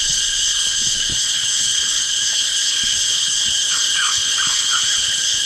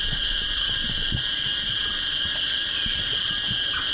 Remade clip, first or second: first